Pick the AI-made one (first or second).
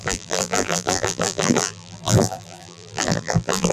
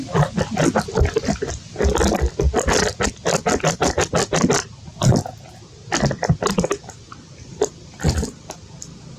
first